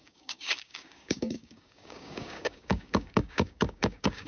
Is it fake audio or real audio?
fake